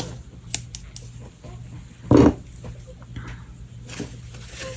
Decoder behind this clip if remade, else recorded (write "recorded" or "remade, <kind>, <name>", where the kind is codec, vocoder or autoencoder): recorded